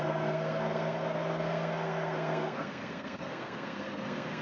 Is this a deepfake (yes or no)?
yes